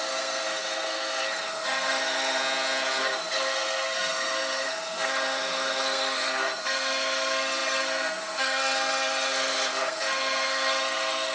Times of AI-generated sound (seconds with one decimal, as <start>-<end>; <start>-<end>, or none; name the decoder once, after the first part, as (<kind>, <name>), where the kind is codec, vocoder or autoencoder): 0.0-2.4 (codec, SNAC); 3.0-11.3